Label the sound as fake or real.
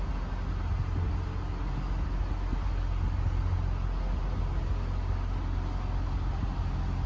real